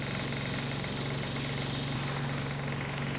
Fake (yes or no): no